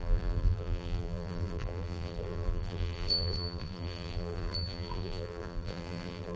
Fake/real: fake